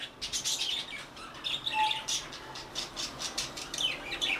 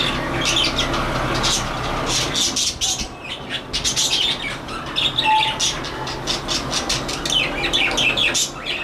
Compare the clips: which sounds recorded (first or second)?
second